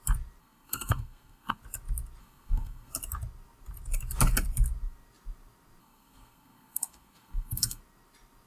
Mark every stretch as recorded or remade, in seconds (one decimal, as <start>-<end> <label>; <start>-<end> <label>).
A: 0.0-0.4 recorded; 0.4-1.6 remade; 1.6-2.2 recorded; 2.2-2.9 remade; 2.9-5.8 recorded; 5.8-7.8 remade; 7.8-8.5 recorded